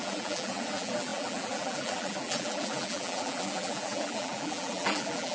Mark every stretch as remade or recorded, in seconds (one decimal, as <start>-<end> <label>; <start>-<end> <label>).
0.0-5.3 remade